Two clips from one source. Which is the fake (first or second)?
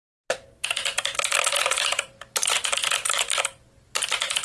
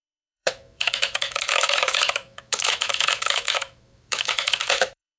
second